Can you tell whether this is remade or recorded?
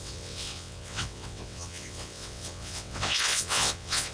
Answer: remade